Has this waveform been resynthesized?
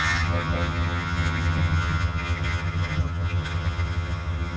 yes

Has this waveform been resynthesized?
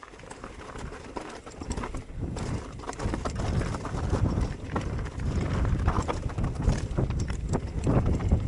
no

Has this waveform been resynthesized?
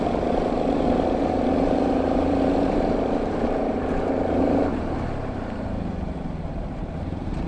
yes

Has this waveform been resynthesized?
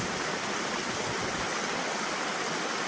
no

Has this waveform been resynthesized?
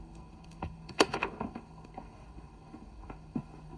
yes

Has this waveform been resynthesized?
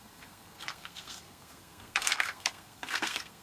yes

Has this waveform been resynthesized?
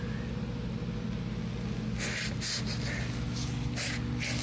no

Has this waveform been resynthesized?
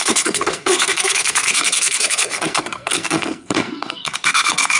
yes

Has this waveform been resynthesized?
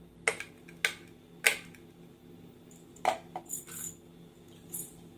no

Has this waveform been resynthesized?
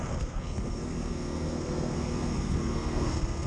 yes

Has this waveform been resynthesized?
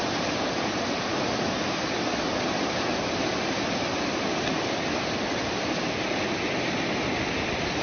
no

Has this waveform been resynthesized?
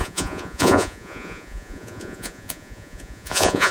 yes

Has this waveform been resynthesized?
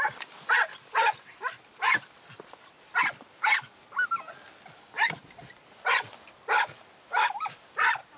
no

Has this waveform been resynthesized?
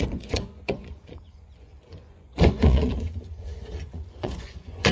yes